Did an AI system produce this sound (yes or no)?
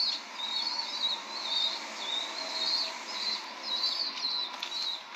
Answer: no